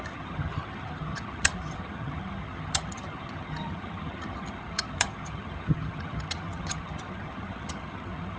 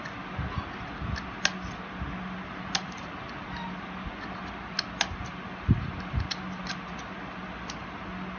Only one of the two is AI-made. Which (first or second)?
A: first